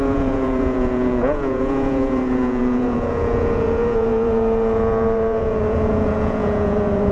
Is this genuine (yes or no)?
no